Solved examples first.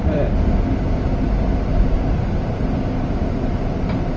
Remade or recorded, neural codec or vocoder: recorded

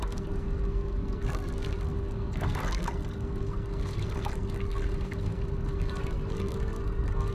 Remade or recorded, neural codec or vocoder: remade, codec, SNAC